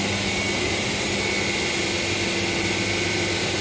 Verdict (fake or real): real